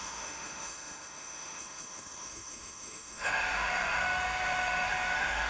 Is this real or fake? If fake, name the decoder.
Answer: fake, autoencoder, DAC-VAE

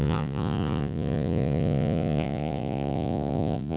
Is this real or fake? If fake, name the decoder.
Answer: fake, vocoder, Vocos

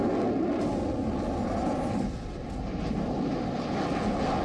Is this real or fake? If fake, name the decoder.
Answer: real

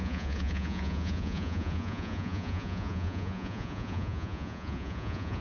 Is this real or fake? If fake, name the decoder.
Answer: fake, vocoder, Vocos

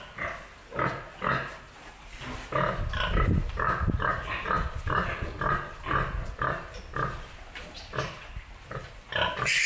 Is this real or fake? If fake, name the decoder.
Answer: real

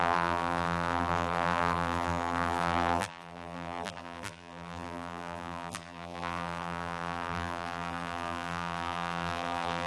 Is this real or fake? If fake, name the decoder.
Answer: fake, vocoder, BigVGAN v2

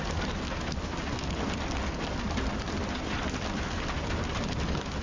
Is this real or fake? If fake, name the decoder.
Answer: real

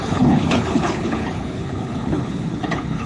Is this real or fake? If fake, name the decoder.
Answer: fake, codec, HILCodec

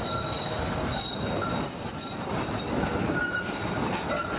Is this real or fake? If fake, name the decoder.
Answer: real